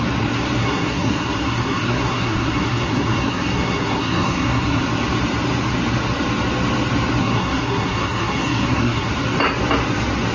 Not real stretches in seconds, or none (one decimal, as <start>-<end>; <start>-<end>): 0.6-4.8; 7.2-9.1